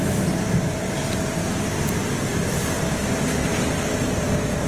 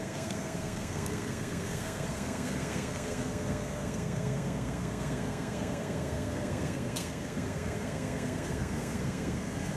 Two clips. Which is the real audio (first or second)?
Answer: first